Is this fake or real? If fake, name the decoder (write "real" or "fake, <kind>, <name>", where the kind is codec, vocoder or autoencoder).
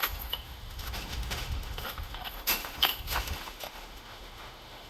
fake, autoencoder, DAC-VAE